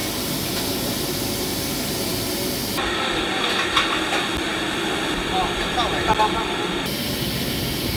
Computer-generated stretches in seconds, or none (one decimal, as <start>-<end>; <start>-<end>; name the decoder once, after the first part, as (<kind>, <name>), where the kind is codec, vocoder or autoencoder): none